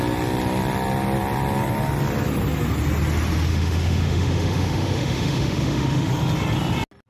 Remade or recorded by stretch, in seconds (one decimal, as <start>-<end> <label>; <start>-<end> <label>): 0.0-3.5 recorded; 3.5-6.1 remade; 6.1-7.1 recorded